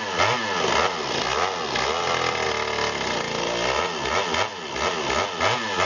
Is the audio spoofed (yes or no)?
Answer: no